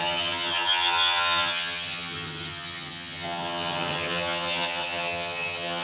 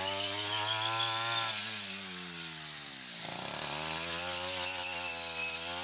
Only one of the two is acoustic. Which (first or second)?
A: second